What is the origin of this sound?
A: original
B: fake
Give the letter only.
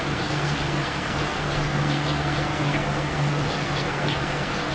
B